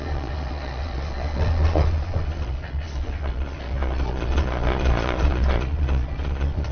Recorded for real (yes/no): no